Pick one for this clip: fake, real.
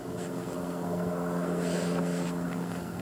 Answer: fake